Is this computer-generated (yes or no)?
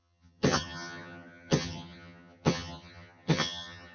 yes